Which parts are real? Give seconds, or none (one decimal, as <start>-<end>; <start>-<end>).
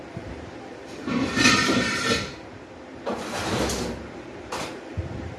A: none